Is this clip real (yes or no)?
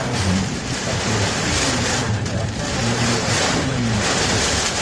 no